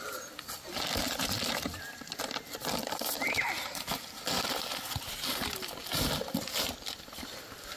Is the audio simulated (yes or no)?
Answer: no